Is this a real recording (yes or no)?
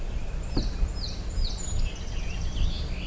yes